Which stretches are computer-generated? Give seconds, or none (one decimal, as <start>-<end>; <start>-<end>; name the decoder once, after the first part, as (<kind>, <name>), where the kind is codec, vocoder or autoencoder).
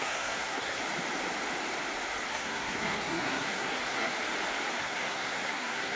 0.0-0.8 (codec, SNAC); 2.3-4.1; 4.8-6.0